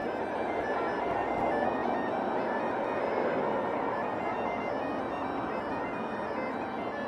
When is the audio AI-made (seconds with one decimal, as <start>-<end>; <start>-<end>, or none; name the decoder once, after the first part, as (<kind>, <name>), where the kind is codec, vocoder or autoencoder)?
none